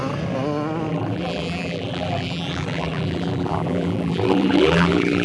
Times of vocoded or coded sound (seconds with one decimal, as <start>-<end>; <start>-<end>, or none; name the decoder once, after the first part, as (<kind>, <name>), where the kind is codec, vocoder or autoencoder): 0.9-5.2 (vocoder, BigVGAN v2)